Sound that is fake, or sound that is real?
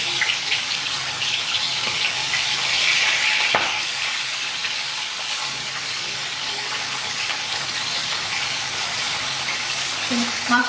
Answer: fake